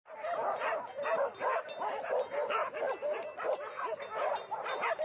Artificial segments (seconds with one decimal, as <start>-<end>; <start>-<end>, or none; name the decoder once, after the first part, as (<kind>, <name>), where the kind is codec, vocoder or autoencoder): none